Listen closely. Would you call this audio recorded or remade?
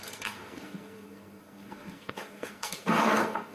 remade